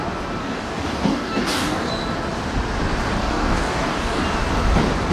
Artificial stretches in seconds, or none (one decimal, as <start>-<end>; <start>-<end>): 0.4-1.9; 3.2-4.2

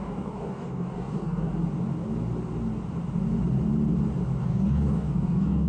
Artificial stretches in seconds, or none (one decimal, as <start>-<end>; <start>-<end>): 0.0-1.5; 4.4-5.7

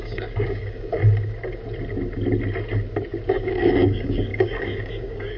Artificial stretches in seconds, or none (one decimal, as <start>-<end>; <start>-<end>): 0.0-1.0; 3.4-5.4

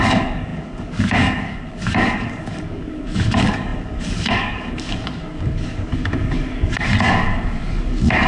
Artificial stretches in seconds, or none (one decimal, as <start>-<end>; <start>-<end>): 0.0-8.3